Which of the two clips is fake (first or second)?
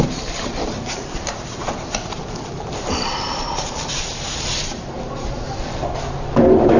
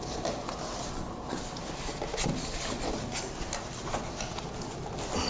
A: first